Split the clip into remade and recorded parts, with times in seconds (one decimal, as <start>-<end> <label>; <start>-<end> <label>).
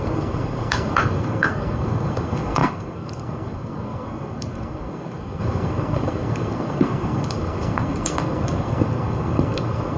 0.0-10.0 remade